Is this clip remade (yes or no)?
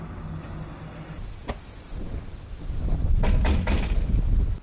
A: no